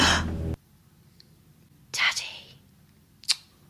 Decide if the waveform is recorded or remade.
recorded